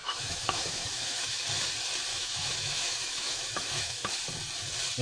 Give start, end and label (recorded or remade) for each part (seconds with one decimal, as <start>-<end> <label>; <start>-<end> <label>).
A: 0.0-1.3 remade; 1.3-2.1 recorded; 2.1-4.1 remade; 4.1-5.0 recorded